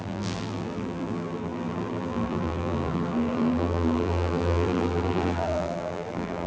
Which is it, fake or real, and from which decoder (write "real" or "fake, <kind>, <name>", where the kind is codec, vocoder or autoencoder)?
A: fake, vocoder, BigVGAN v2